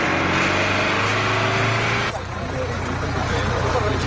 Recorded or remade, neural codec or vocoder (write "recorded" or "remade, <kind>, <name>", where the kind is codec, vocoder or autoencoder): recorded